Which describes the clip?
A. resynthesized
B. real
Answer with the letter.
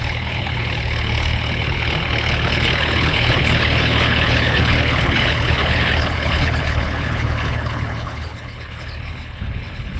A